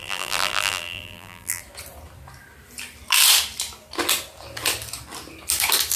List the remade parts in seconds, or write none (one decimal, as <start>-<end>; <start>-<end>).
0.0-1.6